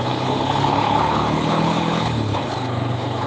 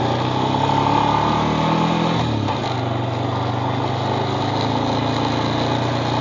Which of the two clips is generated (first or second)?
first